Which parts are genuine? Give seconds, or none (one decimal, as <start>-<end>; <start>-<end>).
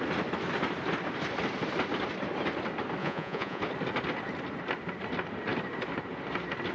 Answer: 0.0-3.0; 3.6-6.7